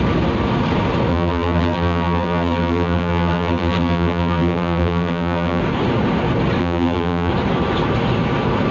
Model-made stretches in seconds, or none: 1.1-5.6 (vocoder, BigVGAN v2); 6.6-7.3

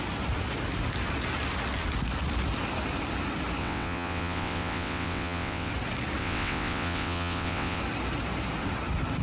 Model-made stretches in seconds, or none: 3.6-5.7 (vocoder, WaveNeXt); 6.2-7.8